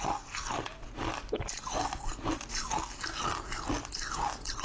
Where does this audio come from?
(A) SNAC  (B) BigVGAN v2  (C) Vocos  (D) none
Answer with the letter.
D